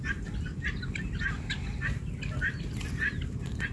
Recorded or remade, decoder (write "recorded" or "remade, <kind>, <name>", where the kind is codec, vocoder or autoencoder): recorded